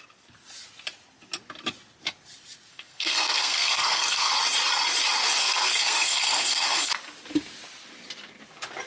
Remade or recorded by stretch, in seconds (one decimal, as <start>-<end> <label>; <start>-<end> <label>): 0.0-2.7 recorded; 2.7-4.3 remade; 4.3-5.4 recorded; 5.4-6.9 remade; 6.9-8.9 recorded